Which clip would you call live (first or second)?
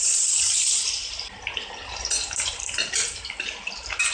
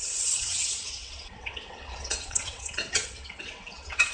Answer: first